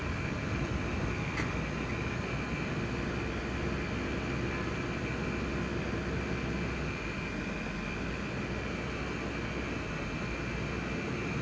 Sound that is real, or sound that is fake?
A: real